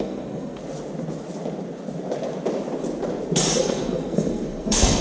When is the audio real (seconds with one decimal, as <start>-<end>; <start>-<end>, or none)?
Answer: 0.6-3.6